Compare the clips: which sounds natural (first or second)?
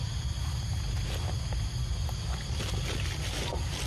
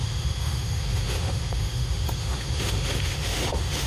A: first